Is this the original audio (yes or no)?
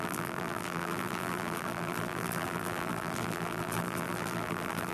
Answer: no